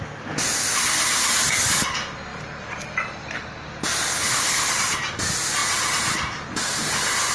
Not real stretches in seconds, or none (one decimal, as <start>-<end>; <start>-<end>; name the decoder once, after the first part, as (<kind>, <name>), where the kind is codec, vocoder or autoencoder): 4.1-4.7 (codec, HILCodec)